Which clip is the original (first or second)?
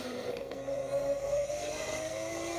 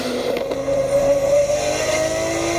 second